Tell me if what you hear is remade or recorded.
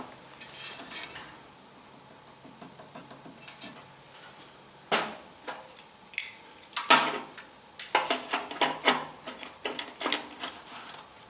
recorded